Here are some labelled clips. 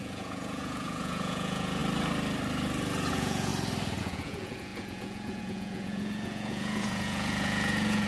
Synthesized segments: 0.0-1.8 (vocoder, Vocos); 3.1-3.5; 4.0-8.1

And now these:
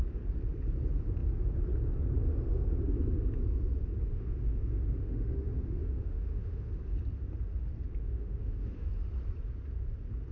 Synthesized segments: 4.1-6.7 (autoencoder, DAC-VAE); 8.0-8.9

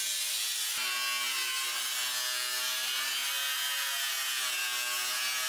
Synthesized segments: none

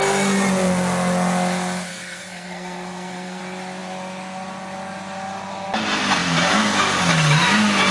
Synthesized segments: 1.9-3.4 (codec, SNAC)

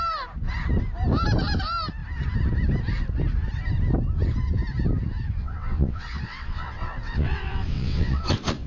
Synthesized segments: 5.4-8.7 (vocoder, WaveNeXt)

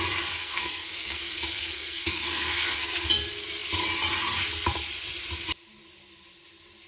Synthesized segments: 0.4-3.1 (codec, SNAC)

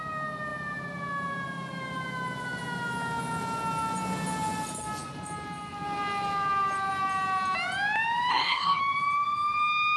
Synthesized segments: 8.3-8.8 (codec, SNAC)